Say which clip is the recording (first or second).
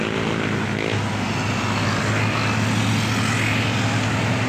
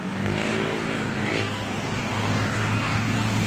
first